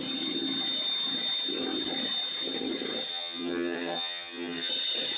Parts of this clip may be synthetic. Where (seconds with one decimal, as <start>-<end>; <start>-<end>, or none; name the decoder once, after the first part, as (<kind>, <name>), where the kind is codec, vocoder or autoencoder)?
3.1-4.7 (vocoder, HiFi-GAN)